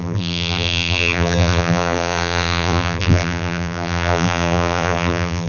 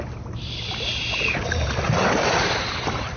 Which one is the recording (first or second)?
second